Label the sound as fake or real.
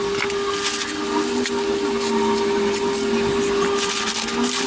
real